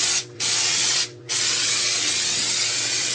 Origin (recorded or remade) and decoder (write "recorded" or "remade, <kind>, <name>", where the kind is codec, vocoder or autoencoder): remade, vocoder, WaveNeXt